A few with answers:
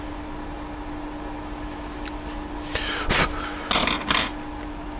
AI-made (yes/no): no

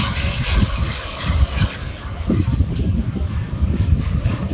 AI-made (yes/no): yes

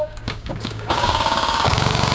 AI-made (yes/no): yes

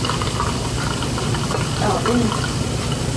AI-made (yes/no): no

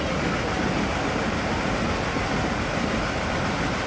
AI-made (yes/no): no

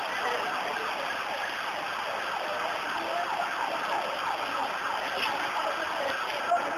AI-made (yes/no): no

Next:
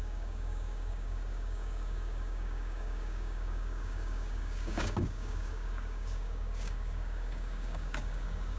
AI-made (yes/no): yes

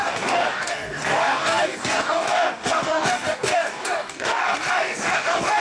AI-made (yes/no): yes